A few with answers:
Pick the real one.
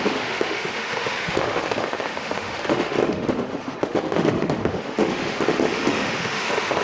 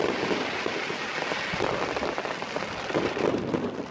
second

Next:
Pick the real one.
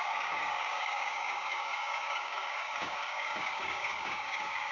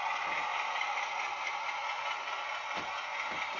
second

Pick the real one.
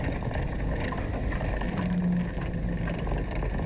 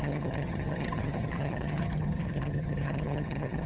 first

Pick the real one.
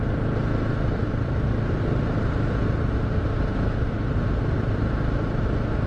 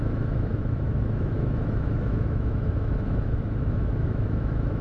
first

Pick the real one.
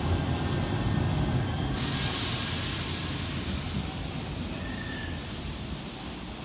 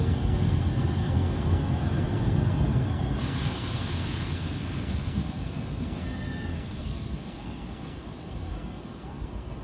first